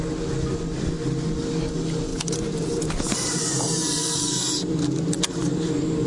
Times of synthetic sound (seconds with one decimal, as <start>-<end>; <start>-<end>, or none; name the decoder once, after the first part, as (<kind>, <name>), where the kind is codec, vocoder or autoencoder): 2.1-4.7 (vocoder, BigVGAN v2)